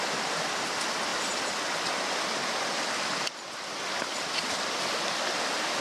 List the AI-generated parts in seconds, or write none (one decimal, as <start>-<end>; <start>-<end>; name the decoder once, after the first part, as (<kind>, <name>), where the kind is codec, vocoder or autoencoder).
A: none